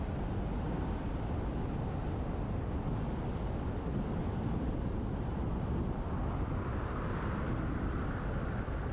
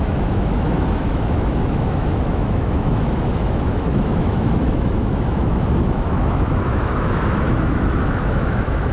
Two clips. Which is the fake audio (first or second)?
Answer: second